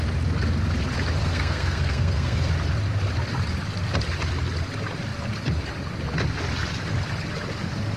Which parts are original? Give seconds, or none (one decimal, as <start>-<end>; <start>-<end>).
0.0-1.2; 2.5-8.0